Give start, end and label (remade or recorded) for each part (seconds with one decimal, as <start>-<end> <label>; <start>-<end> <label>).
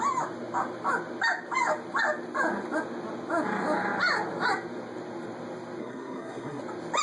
0.0-5.8 recorded; 5.8-6.6 remade; 6.6-7.0 recorded